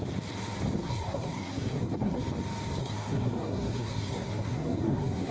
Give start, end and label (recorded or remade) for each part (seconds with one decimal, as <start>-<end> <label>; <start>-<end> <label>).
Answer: 0.0-0.8 recorded; 0.8-2.2 remade; 2.2-2.8 recorded; 2.8-5.3 remade